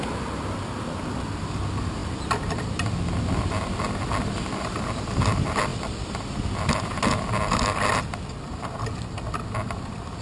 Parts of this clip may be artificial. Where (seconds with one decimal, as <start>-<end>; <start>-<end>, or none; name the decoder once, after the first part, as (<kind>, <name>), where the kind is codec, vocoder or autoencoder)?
none